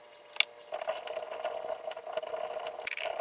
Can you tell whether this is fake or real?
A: real